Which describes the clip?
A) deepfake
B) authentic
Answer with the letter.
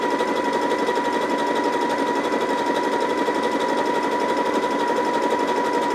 B